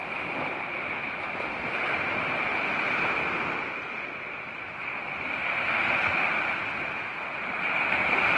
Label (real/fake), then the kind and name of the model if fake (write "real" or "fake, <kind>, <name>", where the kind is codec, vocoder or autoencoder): real